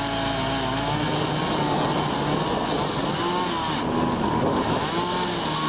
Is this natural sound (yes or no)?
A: yes